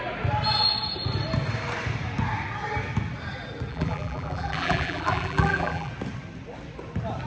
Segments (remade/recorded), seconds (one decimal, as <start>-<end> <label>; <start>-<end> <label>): 0.0-3.7 recorded; 3.7-5.9 remade; 5.9-7.3 recorded